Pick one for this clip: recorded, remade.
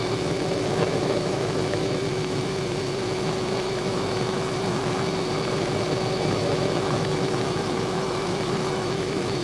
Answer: remade